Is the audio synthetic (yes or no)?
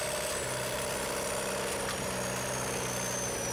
no